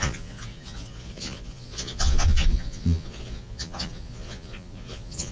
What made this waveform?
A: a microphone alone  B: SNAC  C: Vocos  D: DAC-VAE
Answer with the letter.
C